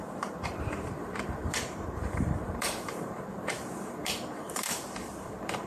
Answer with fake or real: fake